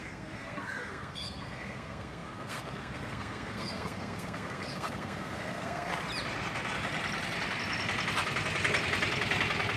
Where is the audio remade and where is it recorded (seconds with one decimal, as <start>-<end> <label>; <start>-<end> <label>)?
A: 0.0-5.9 remade; 5.9-9.8 recorded